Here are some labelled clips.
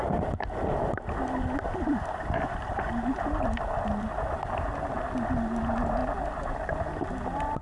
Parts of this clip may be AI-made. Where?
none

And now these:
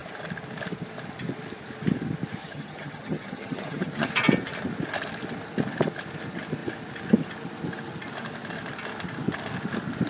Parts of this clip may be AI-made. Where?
2.4-4.1 (vocoder, HiFi-GAN)

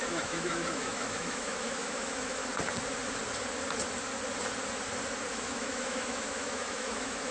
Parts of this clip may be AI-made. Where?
0.0-2.4 (autoencoder, DAC-VAE); 5.3-7.3

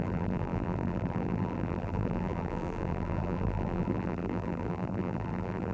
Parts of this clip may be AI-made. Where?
0.0-5.7 (vocoder, BigVGAN v2)

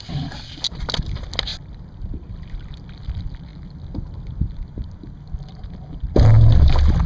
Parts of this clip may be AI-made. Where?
none